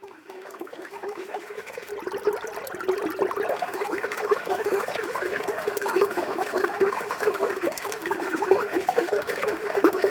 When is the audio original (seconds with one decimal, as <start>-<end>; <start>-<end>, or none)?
1.9-3.5